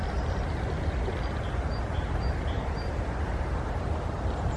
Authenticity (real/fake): real